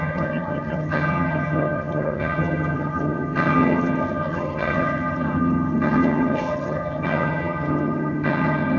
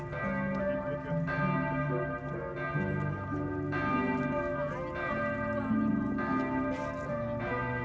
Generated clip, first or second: first